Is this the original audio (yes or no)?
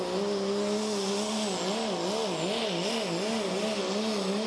yes